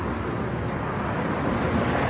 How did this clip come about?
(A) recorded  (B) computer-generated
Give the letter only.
A